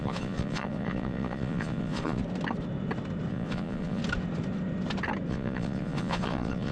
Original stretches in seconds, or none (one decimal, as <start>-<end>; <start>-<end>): 2.2-3.3; 4.0-5.3